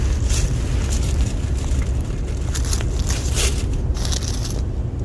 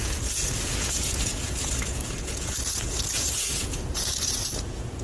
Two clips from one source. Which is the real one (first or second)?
first